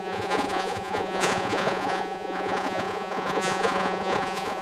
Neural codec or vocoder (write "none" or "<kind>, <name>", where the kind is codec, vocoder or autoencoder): vocoder, Vocos